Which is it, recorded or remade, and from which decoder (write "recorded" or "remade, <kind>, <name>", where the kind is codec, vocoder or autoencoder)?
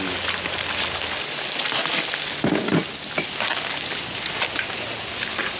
recorded